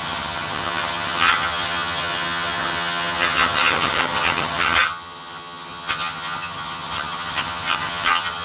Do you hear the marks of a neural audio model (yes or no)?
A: yes